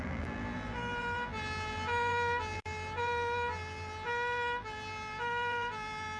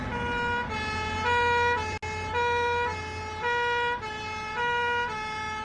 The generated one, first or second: first